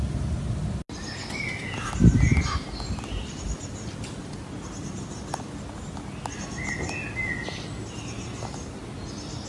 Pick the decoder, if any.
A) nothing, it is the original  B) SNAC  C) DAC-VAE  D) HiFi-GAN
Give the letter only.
A